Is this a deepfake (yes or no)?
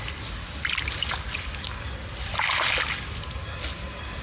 no